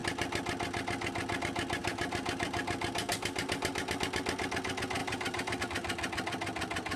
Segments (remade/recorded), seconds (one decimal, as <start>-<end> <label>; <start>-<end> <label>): 0.0-1.8 recorded; 1.8-4.0 remade; 4.0-5.0 recorded; 5.0-5.6 remade; 5.6-7.0 recorded